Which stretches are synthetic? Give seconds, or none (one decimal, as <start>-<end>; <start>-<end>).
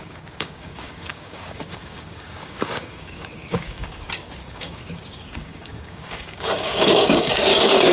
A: 0.0-7.9